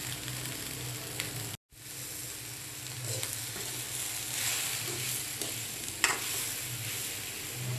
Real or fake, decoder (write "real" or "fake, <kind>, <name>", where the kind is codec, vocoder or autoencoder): real